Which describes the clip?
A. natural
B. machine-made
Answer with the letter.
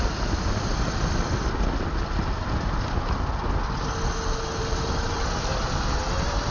A